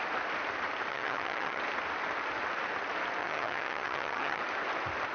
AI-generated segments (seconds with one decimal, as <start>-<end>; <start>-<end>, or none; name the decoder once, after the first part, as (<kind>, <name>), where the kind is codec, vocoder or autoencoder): 0.9-1.6 (vocoder, HiFi-GAN); 3.2-4.4